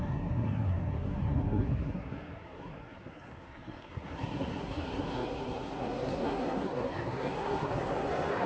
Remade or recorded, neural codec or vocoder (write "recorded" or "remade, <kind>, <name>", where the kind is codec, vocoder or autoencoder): remade, codec, SNAC